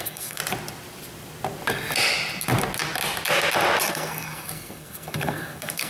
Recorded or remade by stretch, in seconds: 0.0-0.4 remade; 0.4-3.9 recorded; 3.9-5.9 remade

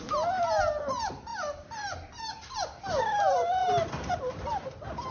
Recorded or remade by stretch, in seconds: 0.0-5.1 recorded

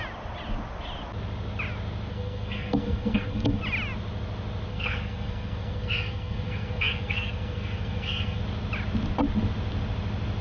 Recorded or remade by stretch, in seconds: 0.0-2.1 recorded; 2.1-3.6 remade; 3.6-4.7 recorded; 4.7-8.4 remade; 8.4-10.4 recorded

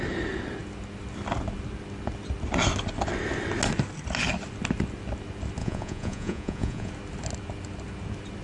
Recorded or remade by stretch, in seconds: 0.0-5.6 recorded; 5.6-6.9 remade; 6.9-8.4 recorded

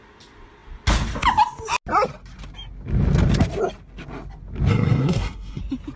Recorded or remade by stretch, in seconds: 0.0-4.7 recorded; 4.7-5.6 remade; 5.6-6.0 recorded